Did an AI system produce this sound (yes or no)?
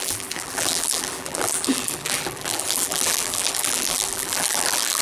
yes